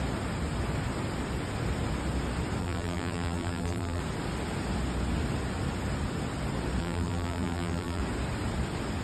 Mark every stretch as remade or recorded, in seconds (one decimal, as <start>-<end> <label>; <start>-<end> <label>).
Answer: 0.0-2.6 recorded; 2.6-4.0 remade; 4.0-6.8 recorded; 6.8-8.0 remade; 8.0-9.0 recorded